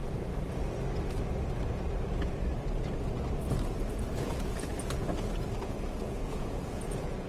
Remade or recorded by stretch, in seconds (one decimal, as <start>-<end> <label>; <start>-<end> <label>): 0.0-3.9 recorded; 3.9-4.7 remade; 4.7-5.6 recorded; 5.6-7.3 remade

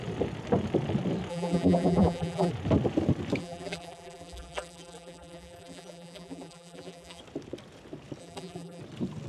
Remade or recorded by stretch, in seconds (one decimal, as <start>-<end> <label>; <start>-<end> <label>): 0.0-1.3 recorded; 1.3-2.5 remade; 2.5-3.4 recorded; 3.4-7.2 remade; 7.2-8.2 recorded; 8.2-8.8 remade; 8.8-9.3 recorded